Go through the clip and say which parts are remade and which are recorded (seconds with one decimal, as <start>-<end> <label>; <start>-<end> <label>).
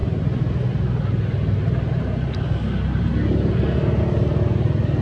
0.0-5.0 recorded